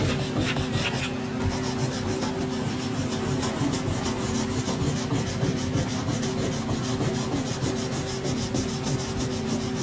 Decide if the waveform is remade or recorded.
recorded